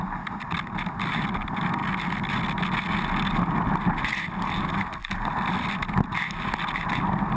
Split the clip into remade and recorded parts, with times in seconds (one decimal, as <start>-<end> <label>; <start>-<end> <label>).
0.0-7.4 recorded

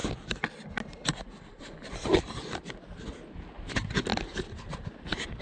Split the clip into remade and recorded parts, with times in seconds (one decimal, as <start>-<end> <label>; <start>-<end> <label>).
0.0-5.4 recorded

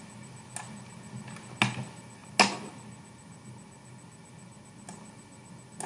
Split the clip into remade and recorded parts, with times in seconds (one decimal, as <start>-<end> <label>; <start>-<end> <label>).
0.0-5.9 recorded

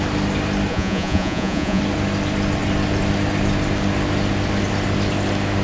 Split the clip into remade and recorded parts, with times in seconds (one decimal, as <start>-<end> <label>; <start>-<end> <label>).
0.0-0.7 recorded; 0.7-1.8 remade; 1.8-5.6 recorded

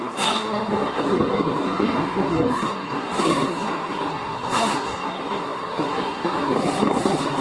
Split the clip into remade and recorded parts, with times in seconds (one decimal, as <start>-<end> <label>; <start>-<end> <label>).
0.0-7.4 remade

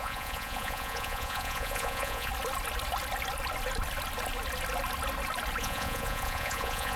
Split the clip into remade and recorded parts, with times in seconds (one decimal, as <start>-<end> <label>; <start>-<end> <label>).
0.0-2.3 remade; 2.3-5.6 recorded; 5.6-7.0 remade